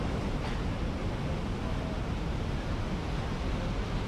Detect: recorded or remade recorded